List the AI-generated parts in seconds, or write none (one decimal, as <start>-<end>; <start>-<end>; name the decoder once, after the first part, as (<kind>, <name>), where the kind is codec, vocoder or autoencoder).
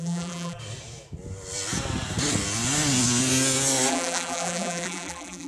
0.0-0.6 (vocoder, BigVGAN v2); 3.9-5.5